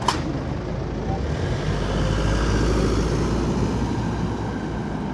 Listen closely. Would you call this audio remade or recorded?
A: recorded